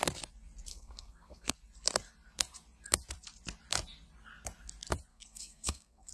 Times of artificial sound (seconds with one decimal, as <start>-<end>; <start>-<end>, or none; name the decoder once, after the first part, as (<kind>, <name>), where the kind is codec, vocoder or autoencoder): 0.7-1.5 (codec, SNAC); 5.1-6.1